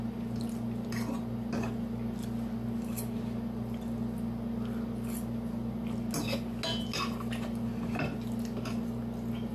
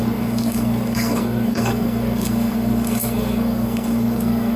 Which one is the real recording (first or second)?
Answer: first